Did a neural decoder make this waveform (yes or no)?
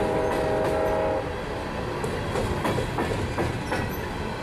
no